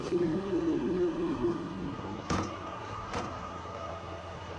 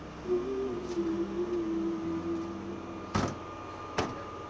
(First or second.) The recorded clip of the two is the second